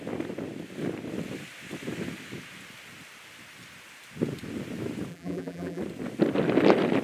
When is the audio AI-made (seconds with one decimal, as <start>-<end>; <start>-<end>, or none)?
5.1-5.8